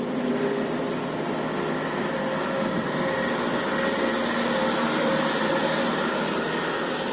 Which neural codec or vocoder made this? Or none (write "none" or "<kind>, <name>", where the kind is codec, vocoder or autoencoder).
none